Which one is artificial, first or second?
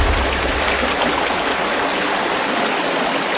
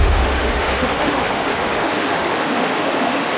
second